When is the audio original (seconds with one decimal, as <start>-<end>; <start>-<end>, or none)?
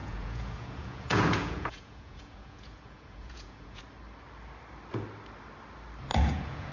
3.8-6.1